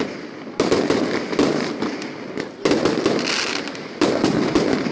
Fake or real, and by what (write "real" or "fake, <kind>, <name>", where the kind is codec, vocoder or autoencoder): real